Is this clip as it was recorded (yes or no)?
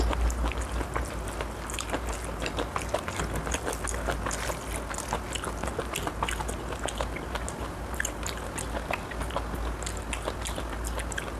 yes